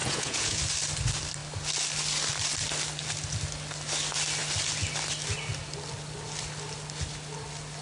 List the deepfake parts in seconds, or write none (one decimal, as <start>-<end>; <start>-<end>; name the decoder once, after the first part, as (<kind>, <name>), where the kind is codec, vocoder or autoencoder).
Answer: 0.0-0.6 (vocoder, Vocos)